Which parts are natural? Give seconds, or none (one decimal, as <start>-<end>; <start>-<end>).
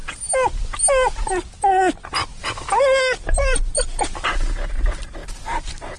0.0-6.0